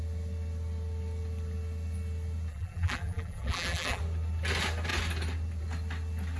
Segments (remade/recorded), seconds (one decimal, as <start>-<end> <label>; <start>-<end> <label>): 0.0-2.5 recorded; 2.5-4.0 remade; 4.0-6.4 recorded